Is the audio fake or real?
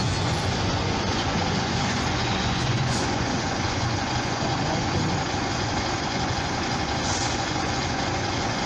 fake